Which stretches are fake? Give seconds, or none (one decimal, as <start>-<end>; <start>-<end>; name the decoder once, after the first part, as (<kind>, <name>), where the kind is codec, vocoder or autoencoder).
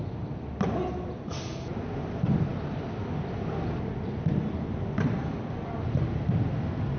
none